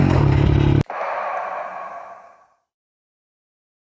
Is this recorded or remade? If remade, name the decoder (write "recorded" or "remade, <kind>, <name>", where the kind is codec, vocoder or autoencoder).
recorded